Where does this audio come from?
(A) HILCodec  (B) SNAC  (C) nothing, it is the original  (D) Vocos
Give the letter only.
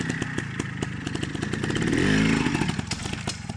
C